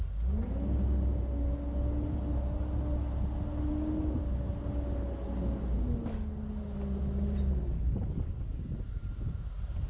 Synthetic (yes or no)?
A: no